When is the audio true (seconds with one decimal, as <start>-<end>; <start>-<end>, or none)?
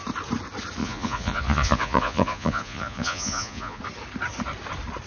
0.0-0.8; 3.8-5.1